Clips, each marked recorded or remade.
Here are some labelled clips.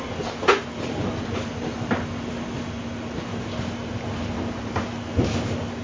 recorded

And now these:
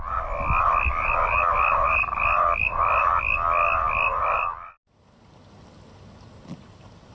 recorded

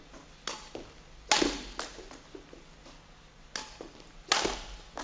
recorded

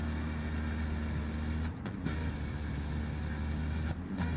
recorded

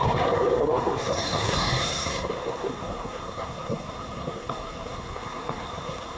remade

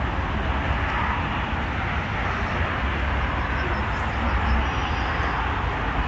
recorded